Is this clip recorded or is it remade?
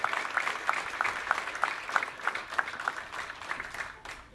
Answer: recorded